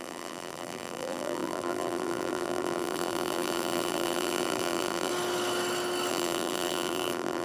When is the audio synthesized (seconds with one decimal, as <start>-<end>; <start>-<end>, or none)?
0.0-5.1; 6.1-7.4